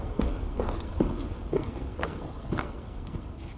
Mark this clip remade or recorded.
remade